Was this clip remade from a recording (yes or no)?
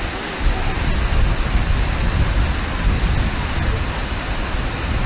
no